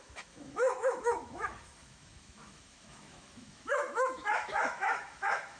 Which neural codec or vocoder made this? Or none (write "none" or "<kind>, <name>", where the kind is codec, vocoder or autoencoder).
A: autoencoder, DAC-VAE